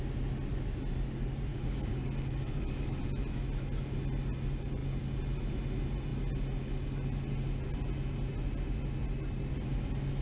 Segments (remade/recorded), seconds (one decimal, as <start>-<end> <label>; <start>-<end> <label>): 0.0-1.5 recorded; 1.5-3.0 remade; 3.0-10.2 recorded